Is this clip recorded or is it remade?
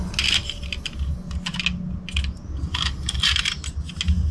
recorded